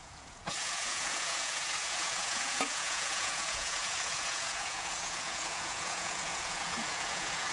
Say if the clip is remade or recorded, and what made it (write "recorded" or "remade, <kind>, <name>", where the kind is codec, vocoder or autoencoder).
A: remade, vocoder, Vocos